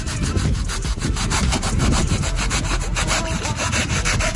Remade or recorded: remade